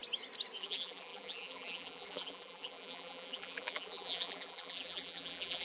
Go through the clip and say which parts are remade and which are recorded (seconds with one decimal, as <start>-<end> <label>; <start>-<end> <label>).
0.0-0.6 recorded; 0.6-5.6 remade